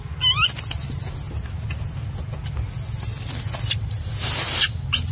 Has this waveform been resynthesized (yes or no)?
no